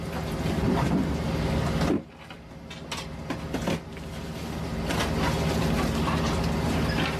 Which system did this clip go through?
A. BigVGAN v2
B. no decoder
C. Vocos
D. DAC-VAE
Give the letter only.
B